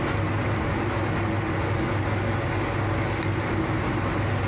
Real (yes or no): yes